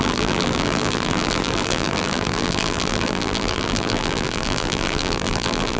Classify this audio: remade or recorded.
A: remade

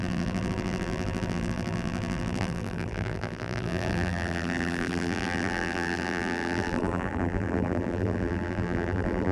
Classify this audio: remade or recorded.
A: remade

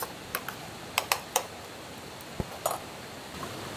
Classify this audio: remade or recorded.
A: recorded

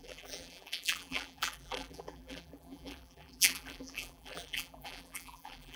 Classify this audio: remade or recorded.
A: remade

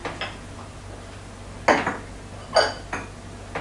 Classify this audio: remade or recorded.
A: recorded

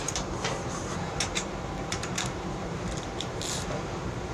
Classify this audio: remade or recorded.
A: remade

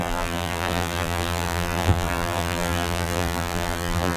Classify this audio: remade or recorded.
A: remade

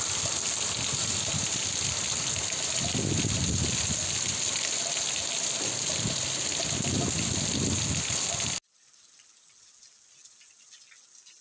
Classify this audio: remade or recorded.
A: recorded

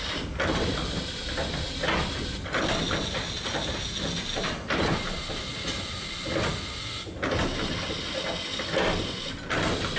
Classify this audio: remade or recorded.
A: recorded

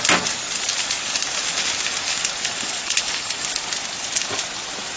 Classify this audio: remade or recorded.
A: recorded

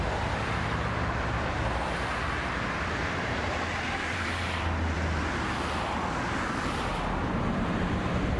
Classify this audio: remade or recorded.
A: remade